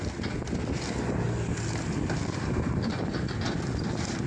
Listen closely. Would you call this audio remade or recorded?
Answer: recorded